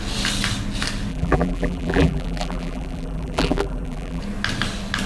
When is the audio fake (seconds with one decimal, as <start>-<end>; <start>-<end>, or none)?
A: 1.1-4.2